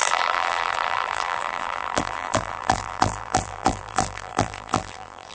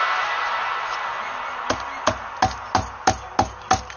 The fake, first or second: first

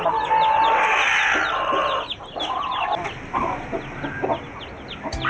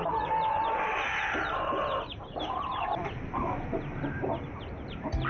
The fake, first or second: second